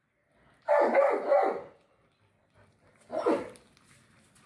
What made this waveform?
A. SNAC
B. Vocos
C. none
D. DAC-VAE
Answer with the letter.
C